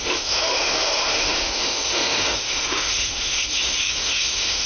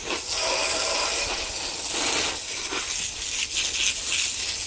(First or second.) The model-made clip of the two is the first